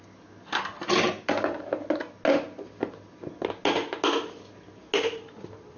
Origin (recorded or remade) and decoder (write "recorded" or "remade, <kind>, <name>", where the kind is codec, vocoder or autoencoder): recorded